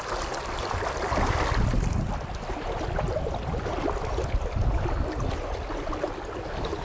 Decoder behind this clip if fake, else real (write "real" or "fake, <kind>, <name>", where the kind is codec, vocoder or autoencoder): real